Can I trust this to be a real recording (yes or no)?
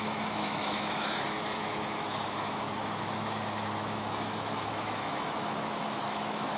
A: no